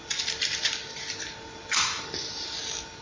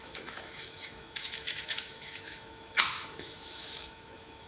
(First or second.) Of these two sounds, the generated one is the second